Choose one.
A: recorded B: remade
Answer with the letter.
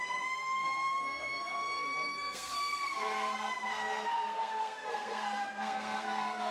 B